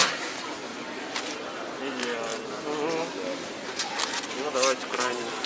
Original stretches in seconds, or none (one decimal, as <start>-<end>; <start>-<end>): 0.0-1.1